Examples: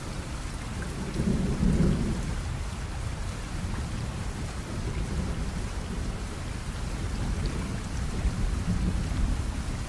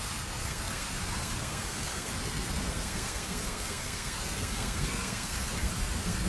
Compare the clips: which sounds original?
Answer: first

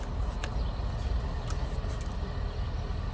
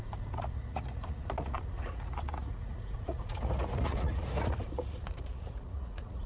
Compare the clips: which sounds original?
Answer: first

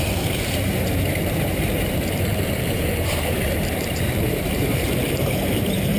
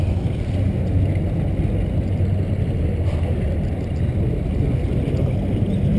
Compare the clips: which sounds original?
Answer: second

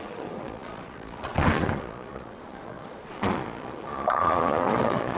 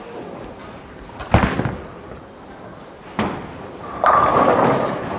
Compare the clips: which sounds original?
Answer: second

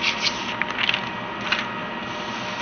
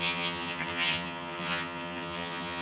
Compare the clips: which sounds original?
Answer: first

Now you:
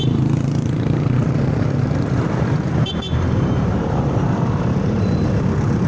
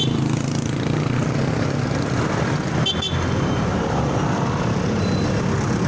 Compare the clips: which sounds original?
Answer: second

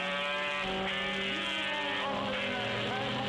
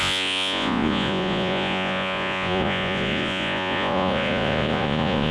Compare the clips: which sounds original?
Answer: first